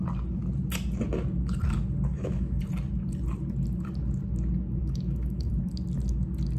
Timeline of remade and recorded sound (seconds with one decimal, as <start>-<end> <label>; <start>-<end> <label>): 0.0-2.1 recorded; 2.1-2.6 remade; 2.6-4.8 recorded; 4.8-5.5 remade; 5.5-6.6 recorded